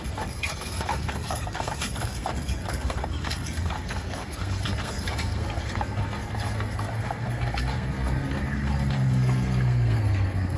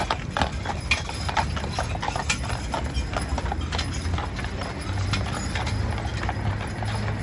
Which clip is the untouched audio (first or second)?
second